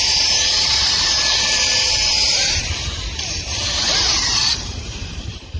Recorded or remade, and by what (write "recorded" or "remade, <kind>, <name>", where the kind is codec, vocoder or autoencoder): remade, vocoder, BigVGAN v2